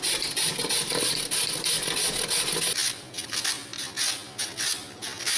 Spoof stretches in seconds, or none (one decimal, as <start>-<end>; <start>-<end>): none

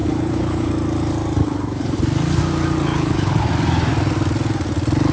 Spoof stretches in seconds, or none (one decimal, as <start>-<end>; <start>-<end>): 0.0-0.7; 1.4-2.0; 2.9-3.5

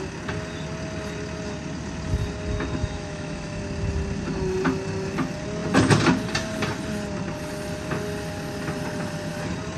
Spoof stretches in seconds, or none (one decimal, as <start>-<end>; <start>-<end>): 2.8-3.6

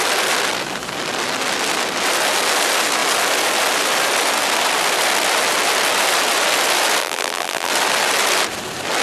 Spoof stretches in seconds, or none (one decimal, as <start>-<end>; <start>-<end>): 7.0-7.7

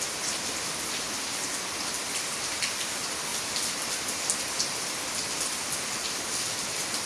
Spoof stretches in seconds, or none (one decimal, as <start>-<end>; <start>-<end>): none